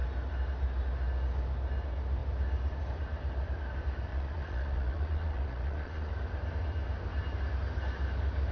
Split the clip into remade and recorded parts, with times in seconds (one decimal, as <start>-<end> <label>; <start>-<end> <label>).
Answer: 0.0-4.1 recorded; 4.1-6.1 remade; 6.1-8.5 recorded